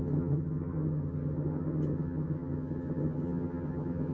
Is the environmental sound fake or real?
fake